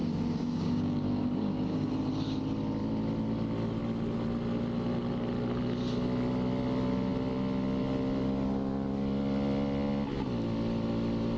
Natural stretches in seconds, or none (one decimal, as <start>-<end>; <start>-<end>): 1.9-11.4